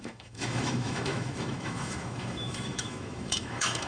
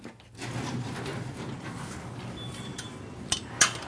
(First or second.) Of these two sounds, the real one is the second